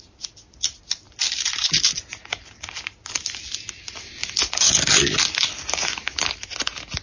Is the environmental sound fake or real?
real